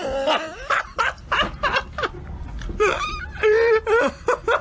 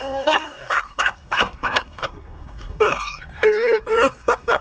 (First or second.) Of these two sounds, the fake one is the second